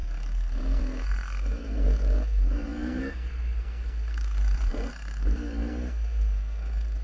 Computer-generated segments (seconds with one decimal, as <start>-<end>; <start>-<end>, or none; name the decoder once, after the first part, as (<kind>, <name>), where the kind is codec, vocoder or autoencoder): 0.0-7.0 (codec, SNAC)